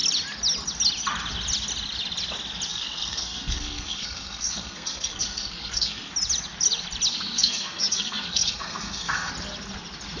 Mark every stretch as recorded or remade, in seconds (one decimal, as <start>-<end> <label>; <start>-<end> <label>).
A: 0.0-2.7 recorded; 2.7-6.1 remade; 6.1-7.1 recorded; 7.1-9.3 remade; 9.3-10.2 recorded